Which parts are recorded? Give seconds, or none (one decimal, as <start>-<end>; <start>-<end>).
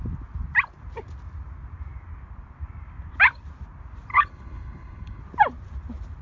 0.0-4.1; 5.2-6.2